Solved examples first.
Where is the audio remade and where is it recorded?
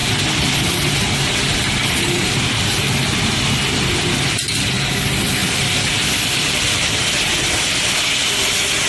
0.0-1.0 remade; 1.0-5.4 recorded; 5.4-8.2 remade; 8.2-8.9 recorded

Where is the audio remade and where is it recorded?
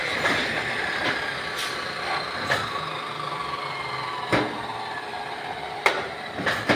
0.0-1.0 remade; 1.0-5.1 recorded; 5.1-6.8 remade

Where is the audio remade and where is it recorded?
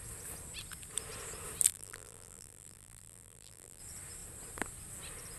0.0-1.7 recorded; 1.7-3.8 remade; 3.8-5.4 recorded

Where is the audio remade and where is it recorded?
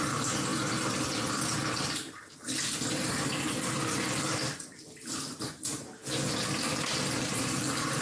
0.0-0.5 remade; 0.5-5.1 recorded; 5.1-6.0 remade; 6.0-6.9 recorded; 6.9-8.0 remade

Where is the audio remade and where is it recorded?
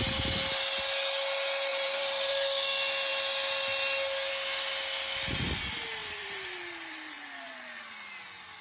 0.0-1.7 recorded; 1.7-2.3 remade; 2.3-6.0 recorded; 6.0-7.8 remade; 7.8-8.6 recorded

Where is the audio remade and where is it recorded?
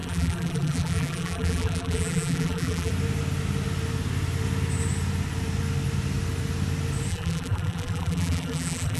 0.0-2.9 remade; 2.9-7.1 recorded; 7.1-9.0 remade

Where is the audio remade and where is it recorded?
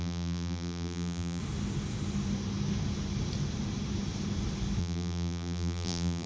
0.0-1.4 remade; 1.4-4.8 recorded; 4.8-6.3 remade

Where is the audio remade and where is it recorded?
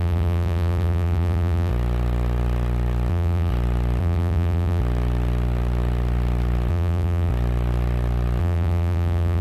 0.0-1.7 remade; 1.7-3.1 recorded; 3.1-3.5 remade; 3.5-4.0 recorded; 4.0-4.8 remade; 4.8-6.7 recorded; 6.7-7.3 remade; 7.3-8.4 recorded; 8.4-9.4 remade